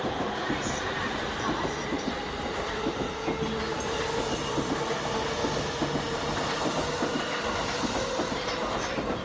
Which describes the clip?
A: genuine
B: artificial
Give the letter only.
A